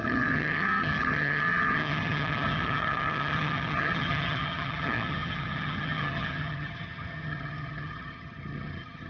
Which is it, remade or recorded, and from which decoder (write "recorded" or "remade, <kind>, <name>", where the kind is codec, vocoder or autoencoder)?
remade, vocoder, HiFi-GAN